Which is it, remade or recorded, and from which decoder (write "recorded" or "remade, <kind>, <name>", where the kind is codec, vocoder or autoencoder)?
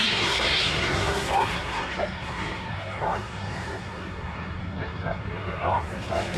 remade, codec, SNAC